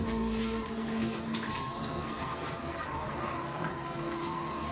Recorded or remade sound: remade